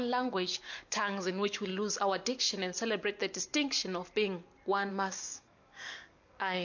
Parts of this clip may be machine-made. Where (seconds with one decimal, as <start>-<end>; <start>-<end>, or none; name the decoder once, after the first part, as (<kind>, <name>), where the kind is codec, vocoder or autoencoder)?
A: 0.0-1.7 (codec, DAC); 4.9-6.6